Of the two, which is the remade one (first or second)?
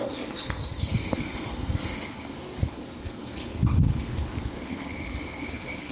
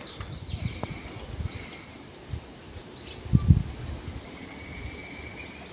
first